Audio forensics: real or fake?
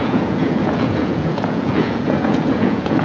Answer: fake